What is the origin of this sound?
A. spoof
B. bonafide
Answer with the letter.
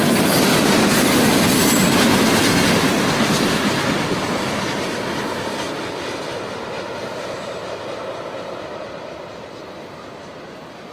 B